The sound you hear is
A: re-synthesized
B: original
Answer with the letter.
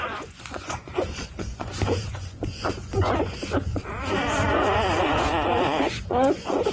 A